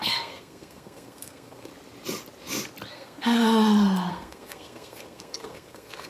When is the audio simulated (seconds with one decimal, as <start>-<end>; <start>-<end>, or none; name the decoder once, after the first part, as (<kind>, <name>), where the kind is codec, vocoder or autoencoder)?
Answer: 0.0-1.7 (codec, SNAC); 2.9-3.4; 4.1-6.1